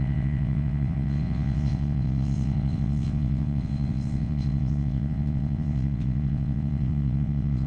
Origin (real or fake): fake